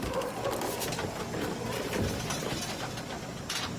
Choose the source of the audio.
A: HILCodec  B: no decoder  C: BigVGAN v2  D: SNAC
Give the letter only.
B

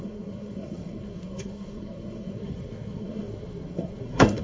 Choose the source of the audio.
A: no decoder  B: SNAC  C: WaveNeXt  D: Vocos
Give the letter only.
B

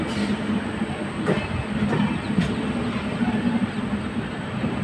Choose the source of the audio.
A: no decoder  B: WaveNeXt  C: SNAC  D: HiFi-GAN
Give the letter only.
A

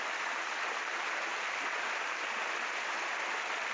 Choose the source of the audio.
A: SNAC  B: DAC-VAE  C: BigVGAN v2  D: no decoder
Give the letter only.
D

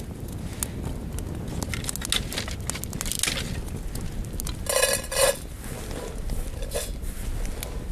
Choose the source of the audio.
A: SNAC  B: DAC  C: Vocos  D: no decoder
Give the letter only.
D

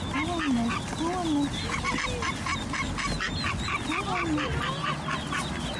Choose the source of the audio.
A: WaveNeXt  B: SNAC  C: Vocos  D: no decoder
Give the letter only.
D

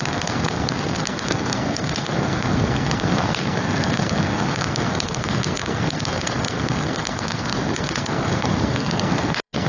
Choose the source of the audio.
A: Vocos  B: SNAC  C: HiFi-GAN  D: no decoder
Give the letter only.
B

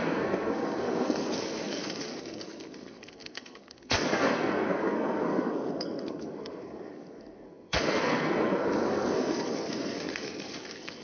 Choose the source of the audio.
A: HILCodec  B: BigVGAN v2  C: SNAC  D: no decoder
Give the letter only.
C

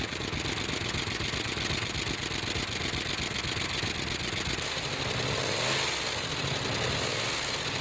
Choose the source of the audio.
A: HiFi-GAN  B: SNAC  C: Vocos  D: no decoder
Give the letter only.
D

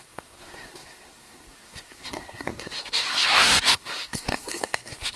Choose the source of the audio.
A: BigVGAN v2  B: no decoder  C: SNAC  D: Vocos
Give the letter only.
C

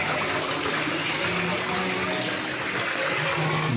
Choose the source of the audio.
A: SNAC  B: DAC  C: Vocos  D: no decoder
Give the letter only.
D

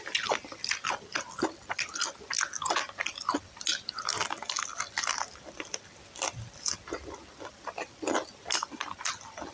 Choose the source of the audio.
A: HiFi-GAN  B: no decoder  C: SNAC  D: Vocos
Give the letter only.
B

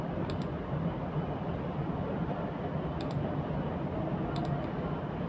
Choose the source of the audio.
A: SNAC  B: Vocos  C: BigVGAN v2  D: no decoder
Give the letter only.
D